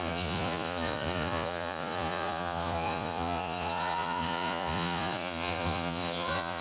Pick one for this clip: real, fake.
fake